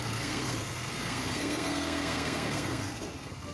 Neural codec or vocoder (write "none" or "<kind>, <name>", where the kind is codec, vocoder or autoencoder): codec, SNAC